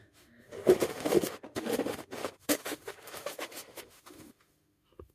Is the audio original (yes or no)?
no